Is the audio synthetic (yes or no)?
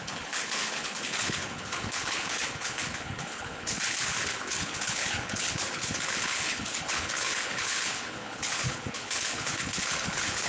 yes